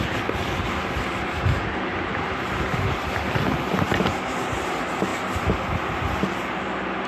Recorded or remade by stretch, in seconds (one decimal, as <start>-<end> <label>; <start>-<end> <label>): 0.0-7.1 recorded